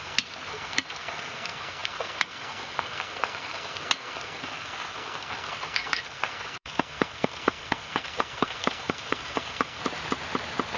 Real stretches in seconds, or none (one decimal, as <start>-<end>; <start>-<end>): 9.8-10.8